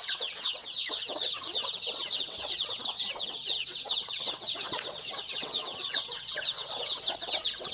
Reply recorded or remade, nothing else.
remade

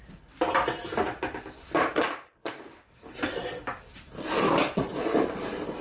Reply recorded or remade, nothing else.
recorded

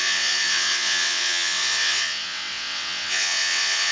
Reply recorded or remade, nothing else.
remade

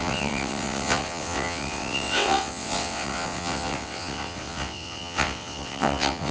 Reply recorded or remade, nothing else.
remade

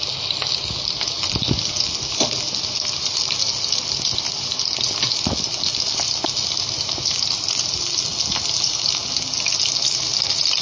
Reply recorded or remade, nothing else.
recorded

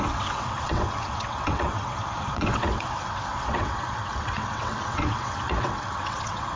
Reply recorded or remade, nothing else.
remade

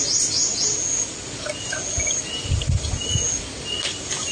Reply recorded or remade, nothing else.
recorded